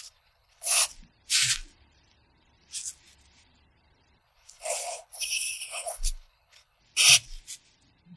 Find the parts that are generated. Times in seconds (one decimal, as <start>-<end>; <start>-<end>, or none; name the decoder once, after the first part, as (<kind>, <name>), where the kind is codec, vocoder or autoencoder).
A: 0.0-0.8 (codec, HILCodec); 4.2-6.8